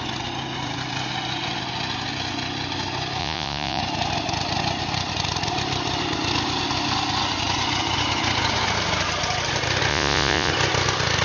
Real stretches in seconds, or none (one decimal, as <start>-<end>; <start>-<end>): 0.0-3.2; 3.8-9.9; 10.5-11.2

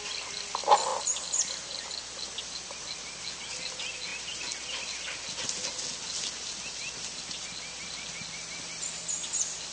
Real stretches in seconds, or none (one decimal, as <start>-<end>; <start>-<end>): 0.0-9.7

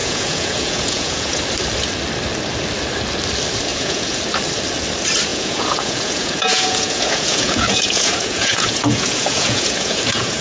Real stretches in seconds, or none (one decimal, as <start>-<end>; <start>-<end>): 1.4-3.7; 4.2-5.3

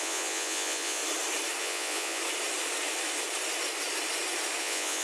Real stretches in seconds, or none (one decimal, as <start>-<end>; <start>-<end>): 1.0-1.6; 2.2-4.6

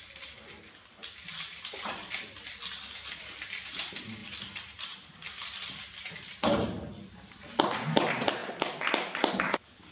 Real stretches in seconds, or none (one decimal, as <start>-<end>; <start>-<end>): 0.0-9.9

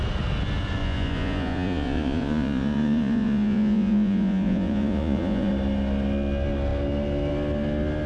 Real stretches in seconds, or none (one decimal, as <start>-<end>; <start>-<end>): 0.0-0.8; 5.5-8.1